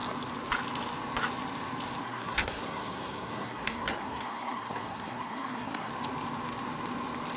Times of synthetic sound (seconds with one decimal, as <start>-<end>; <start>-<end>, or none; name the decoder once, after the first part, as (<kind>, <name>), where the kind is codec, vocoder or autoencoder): 2.0-5.9 (codec, SNAC)